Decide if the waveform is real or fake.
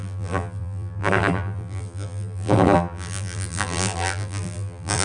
fake